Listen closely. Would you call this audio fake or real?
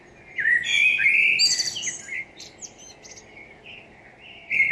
real